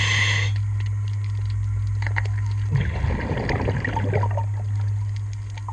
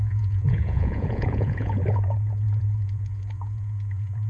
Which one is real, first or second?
first